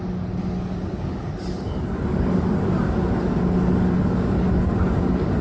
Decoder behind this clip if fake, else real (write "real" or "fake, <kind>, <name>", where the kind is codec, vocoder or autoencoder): fake, codec, DAC